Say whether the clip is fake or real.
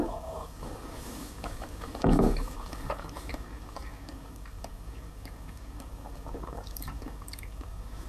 fake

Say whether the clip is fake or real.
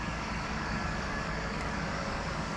fake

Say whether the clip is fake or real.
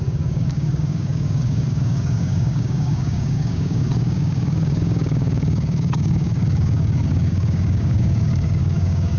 fake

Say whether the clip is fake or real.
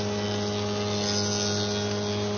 real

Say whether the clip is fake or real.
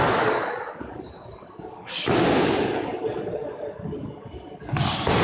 fake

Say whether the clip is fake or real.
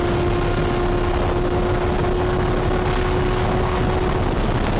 real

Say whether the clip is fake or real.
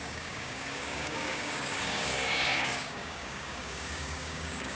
fake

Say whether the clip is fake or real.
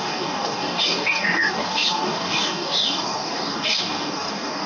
fake